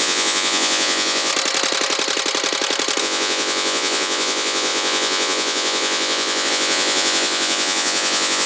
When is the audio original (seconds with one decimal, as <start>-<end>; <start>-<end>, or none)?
1.3-3.0

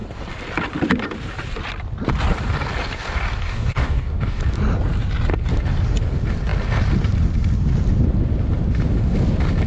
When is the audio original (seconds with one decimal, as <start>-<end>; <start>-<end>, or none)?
0.0-3.4; 4.4-9.7

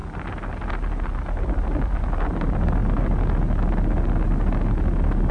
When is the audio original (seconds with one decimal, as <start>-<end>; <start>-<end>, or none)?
0.0-5.3

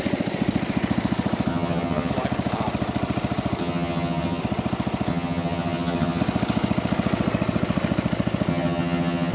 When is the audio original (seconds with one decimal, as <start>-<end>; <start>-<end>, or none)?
0.0-1.5; 2.1-3.6; 4.4-5.1; 6.2-8.5

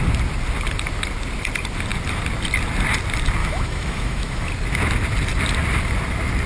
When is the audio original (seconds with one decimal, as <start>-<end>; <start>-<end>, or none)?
0.0-3.4; 4.5-6.5